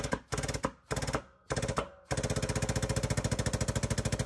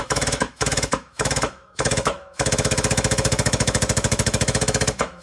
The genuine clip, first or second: first